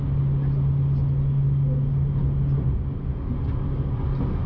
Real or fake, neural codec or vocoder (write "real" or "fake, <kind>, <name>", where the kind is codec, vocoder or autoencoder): real